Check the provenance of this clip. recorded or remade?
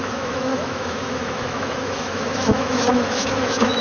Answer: remade